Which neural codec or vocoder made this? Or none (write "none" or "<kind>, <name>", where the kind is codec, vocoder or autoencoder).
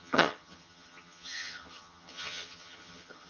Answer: vocoder, HiFi-GAN